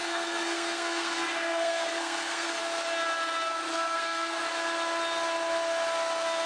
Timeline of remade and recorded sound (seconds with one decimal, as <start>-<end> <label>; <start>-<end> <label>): 0.0-2.6 remade; 2.6-3.7 recorded; 3.7-4.4 remade; 4.4-6.5 recorded